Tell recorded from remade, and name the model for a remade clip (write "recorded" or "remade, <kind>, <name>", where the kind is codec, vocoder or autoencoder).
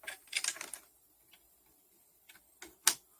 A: recorded